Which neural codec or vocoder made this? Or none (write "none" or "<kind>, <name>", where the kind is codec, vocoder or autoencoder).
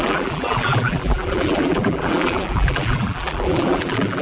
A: vocoder, BigVGAN v2